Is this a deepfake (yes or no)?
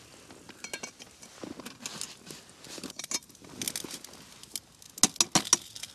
no